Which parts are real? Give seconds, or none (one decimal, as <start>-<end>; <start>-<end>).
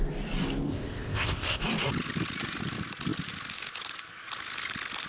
0.0-0.7; 1.6-5.1